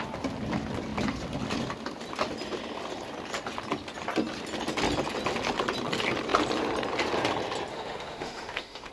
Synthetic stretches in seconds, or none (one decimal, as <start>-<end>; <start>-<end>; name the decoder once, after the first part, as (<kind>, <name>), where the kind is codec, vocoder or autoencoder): 7.7-8.9 (autoencoder, DAC-VAE)